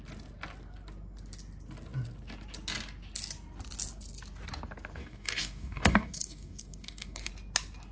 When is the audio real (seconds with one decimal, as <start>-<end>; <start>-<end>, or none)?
0.0-5.0; 7.3-7.9